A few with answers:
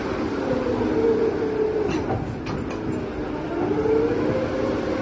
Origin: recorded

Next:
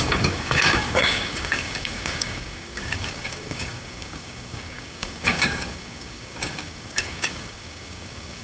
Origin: remade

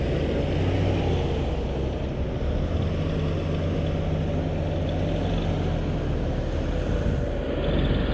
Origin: recorded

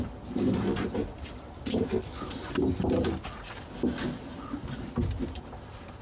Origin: recorded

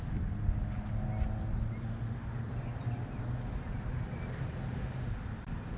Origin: recorded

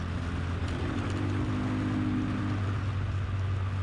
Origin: recorded